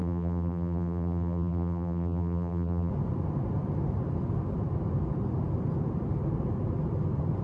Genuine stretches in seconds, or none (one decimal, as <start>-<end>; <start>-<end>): 2.9-7.4